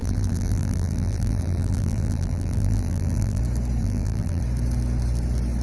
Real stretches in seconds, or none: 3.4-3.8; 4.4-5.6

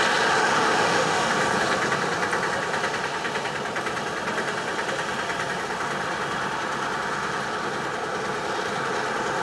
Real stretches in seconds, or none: 0.0-0.4; 1.3-9.4

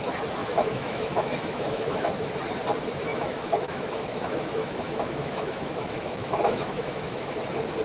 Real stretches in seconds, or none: 0.0-0.4; 2.3-3.1; 7.3-7.8

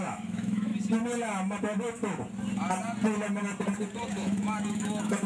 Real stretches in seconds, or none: 0.7-1.6; 2.0-4.1

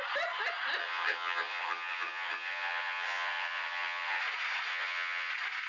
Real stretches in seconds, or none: 0.0-0.8; 4.2-4.7; 5.3-5.7

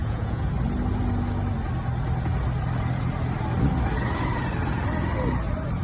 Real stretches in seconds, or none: 0.5-5.8

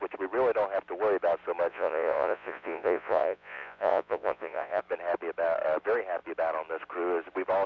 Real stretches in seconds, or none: 0.0-1.7; 4.8-7.7